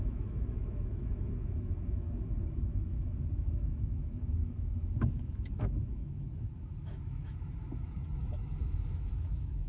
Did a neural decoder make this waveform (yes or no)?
yes